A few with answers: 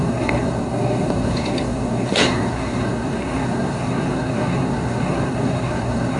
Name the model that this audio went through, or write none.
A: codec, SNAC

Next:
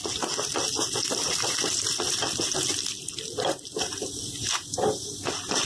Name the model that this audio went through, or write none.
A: none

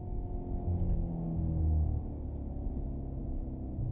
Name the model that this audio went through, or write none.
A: none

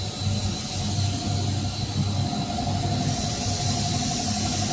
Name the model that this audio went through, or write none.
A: none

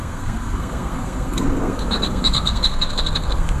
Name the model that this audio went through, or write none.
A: codec, SNAC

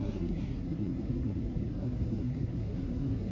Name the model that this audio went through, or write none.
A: codec, SNAC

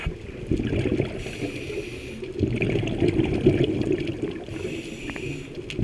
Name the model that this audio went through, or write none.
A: none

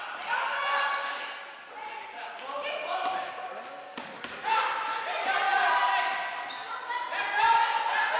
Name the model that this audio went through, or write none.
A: none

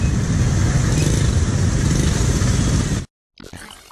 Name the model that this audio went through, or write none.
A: none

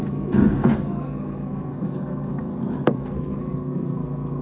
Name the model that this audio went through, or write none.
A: codec, SNAC